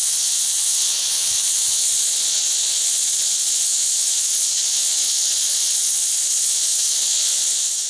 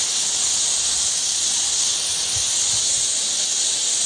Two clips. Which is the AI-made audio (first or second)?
first